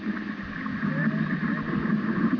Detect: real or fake real